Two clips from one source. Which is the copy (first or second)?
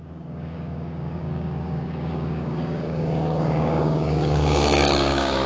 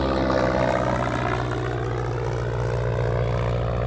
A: first